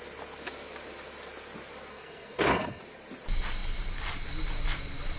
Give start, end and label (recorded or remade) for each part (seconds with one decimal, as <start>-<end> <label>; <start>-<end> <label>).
0.0-1.9 recorded; 1.9-2.8 remade; 2.8-5.2 recorded